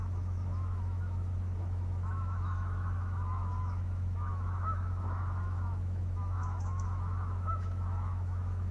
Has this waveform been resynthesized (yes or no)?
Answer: yes